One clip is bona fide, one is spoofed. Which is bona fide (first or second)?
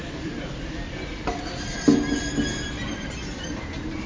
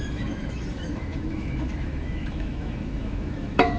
first